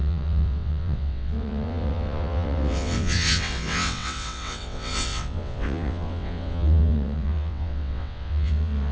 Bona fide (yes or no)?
no